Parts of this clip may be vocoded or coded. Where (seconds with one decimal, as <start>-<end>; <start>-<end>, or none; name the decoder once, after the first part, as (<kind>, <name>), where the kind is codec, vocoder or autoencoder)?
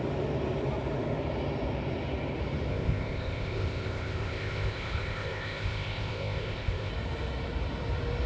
2.7-6.9 (codec, ZipCodec)